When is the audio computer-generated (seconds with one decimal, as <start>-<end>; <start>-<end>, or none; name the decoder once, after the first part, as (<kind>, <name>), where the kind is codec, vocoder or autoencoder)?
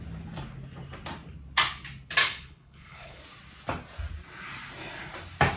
2.2-3.2 (codec, HILCodec)